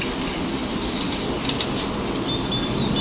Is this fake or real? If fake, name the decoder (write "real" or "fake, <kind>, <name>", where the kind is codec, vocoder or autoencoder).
real